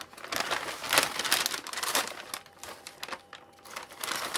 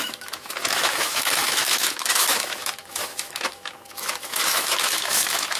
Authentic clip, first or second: first